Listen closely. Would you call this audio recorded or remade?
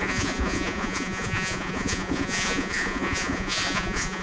remade